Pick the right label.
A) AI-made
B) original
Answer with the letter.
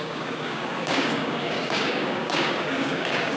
A